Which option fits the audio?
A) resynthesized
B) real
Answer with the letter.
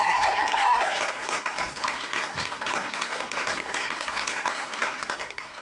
A